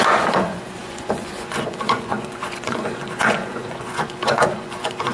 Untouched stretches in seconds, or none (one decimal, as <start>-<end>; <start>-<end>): none